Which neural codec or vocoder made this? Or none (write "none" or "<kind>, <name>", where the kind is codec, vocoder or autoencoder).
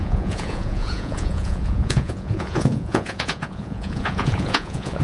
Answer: vocoder, Vocos